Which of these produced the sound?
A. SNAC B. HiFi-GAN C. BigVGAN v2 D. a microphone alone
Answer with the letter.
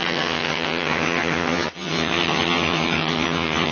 B